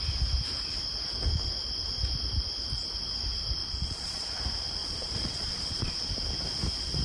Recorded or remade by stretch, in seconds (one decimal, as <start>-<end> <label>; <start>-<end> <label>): 0.0-3.6 recorded; 3.6-4.3 remade; 4.3-4.8 recorded; 4.8-6.1 remade; 6.1-7.0 recorded